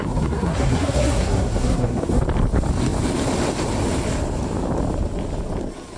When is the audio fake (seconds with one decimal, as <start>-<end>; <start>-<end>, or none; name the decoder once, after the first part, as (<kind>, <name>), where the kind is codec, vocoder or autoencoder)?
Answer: 0.0-2.2 (codec, SNAC)